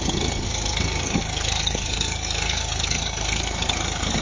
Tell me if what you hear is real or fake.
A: fake